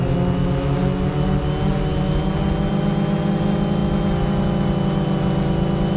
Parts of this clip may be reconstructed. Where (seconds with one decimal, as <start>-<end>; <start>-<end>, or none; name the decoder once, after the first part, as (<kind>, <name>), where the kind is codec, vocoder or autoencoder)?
none